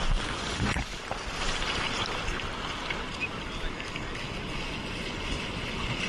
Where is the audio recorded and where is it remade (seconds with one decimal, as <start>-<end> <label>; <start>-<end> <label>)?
0.0-0.9 remade; 0.9-4.6 recorded; 4.6-6.1 remade